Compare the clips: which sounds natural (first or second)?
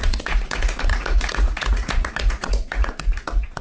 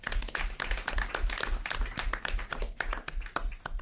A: second